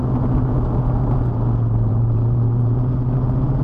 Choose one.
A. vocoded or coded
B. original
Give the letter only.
B